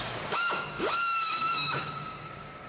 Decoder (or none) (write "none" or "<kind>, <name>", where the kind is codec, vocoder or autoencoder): codec, DAC